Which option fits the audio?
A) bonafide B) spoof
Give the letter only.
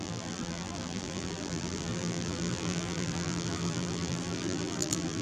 B